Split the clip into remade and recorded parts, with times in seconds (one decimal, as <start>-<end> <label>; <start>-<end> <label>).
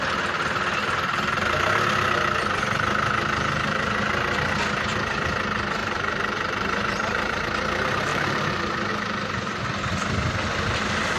0.0-5.8 recorded; 5.8-7.4 remade; 7.4-8.1 recorded; 8.1-8.9 remade; 8.9-11.2 recorded